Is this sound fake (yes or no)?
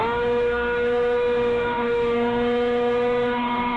yes